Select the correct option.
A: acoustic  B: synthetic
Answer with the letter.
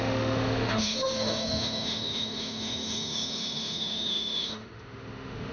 B